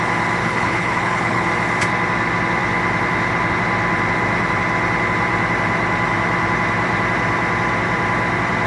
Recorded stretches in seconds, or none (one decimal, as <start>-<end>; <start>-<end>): 0.0-0.4; 1.5-8.7